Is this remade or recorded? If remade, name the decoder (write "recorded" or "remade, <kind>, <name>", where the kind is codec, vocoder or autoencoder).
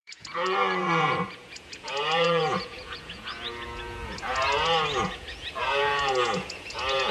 remade, vocoder, Vocos